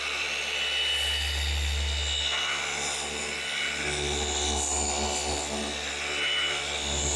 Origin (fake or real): real